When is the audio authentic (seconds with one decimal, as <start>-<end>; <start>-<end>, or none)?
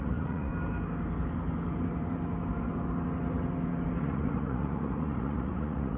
0.5-4.0